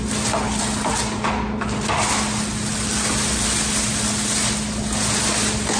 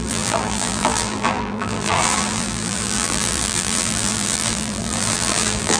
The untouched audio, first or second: first